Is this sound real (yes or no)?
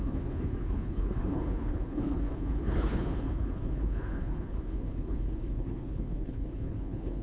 no